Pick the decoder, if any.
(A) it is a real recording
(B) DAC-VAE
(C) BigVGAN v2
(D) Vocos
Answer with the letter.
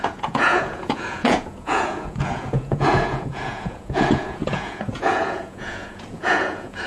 D